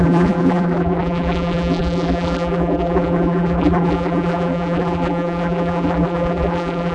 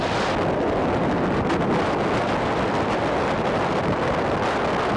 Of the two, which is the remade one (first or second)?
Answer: first